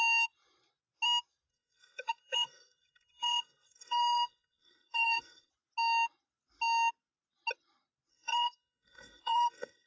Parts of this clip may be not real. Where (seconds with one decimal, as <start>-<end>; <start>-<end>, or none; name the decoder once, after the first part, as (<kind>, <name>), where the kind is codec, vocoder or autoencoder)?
1.5-5.5 (codec, SNAC); 8.1-9.9